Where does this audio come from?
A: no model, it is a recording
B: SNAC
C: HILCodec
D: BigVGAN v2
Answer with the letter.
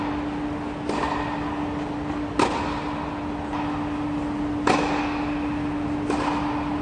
A